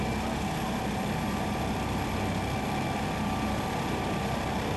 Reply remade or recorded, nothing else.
recorded